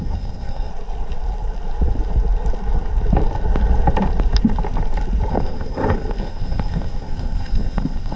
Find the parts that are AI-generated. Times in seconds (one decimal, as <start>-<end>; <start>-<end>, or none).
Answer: 0.0-0.7; 5.3-8.2